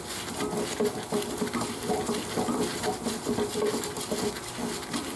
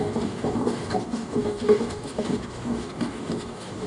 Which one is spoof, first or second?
second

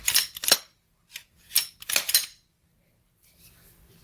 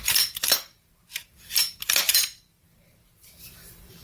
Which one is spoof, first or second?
second